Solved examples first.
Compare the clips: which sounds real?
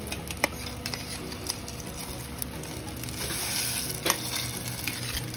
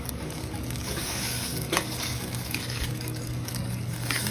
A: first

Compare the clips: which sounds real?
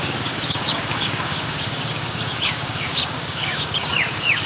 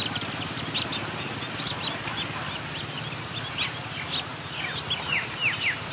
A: second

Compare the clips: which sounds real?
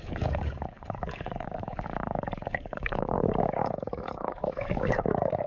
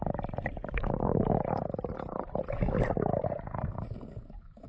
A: second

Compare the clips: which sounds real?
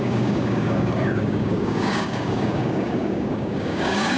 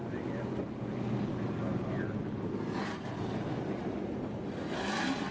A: second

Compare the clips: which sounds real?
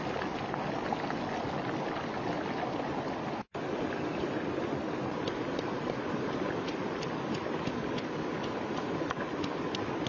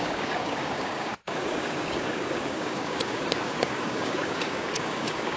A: first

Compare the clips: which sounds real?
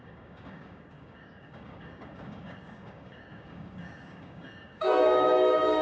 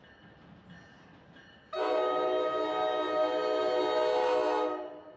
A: second